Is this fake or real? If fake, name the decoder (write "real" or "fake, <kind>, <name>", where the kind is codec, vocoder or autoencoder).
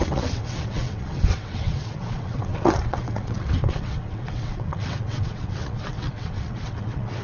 fake, vocoder, WaveNeXt